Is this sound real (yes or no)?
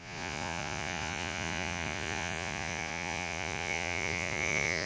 no